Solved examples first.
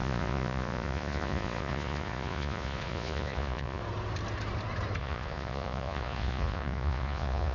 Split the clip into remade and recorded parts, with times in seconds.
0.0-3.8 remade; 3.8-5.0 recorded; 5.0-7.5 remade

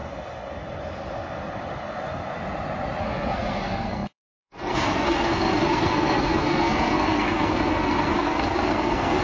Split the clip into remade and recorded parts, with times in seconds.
0.0-3.0 recorded; 3.0-9.2 remade

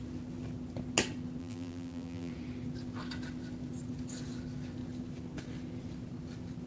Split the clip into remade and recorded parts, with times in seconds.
0.0-1.4 recorded; 1.4-2.3 remade; 2.3-6.7 recorded